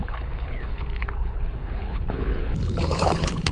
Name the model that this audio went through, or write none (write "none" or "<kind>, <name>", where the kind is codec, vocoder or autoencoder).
codec, HILCodec